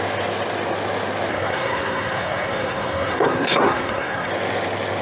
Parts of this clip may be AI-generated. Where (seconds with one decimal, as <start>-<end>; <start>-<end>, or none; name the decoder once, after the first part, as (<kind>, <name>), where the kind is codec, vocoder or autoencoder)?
1.3-4.3 (codec, SNAC)

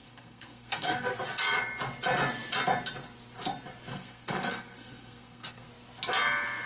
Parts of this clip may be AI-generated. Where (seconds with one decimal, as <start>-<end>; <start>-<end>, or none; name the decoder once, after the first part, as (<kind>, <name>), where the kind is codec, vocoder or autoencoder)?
0.0-1.2 (codec, SNAC); 3.9-5.7

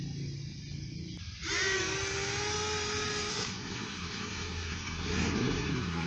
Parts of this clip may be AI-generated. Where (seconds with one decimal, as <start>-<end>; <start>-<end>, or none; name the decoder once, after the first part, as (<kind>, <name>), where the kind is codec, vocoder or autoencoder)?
3.3-6.1 (codec, SNAC)

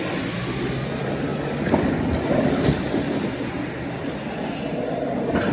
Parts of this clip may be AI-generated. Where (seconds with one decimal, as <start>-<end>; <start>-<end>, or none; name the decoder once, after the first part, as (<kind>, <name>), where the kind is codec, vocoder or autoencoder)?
none